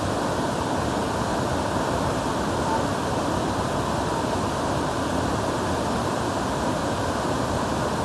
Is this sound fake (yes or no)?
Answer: no